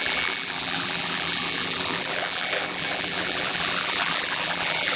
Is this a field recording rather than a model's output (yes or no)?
no